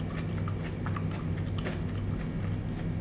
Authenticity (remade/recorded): recorded